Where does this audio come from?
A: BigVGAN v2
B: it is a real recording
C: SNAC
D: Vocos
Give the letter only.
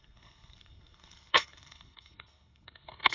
C